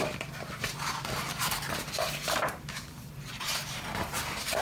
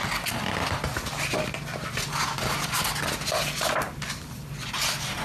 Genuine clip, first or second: second